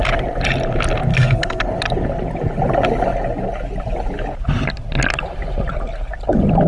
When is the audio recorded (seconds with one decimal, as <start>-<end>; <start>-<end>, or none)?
0.0-1.1; 1.6-6.7